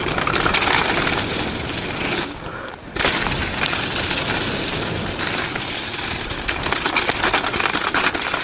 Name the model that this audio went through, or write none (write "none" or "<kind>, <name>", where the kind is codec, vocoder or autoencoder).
none